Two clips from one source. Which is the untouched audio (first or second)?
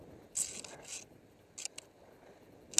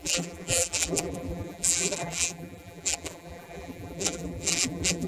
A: first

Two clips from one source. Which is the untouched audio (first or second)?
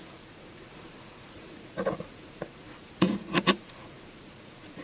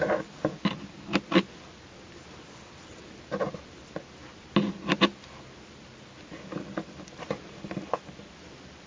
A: second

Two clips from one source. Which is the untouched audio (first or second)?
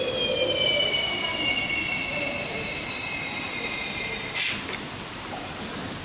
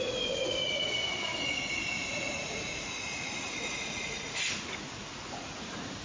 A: first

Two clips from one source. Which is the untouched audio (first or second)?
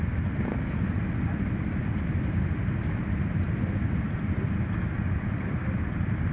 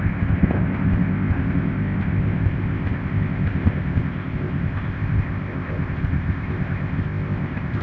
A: first